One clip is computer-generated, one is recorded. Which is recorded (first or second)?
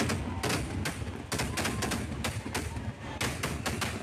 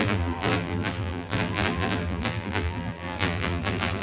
first